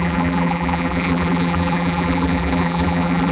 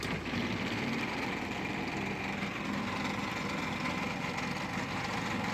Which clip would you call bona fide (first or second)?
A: second